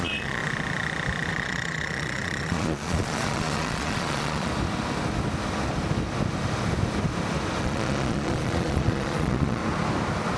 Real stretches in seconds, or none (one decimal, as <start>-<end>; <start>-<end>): 0.4-1.3; 4.5-7.6; 9.6-10.4